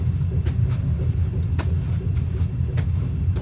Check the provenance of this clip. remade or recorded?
recorded